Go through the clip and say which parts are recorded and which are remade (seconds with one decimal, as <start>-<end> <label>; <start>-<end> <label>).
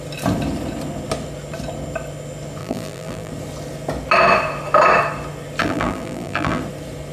0.0-2.6 recorded; 2.6-3.3 remade; 3.3-5.6 recorded; 5.6-6.6 remade; 6.6-7.1 recorded